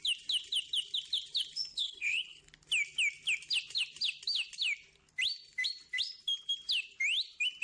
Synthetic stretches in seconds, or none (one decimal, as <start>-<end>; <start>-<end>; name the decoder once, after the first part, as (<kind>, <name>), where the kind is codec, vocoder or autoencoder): 1.7-2.4 (codec, HILCodec)